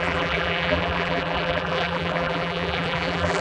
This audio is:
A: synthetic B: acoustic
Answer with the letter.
A